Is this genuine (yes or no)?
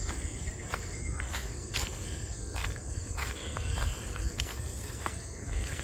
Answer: no